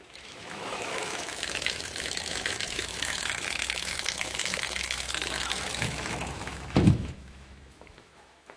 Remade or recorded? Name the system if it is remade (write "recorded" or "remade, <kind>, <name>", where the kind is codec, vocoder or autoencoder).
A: remade, autoencoder, DAC-VAE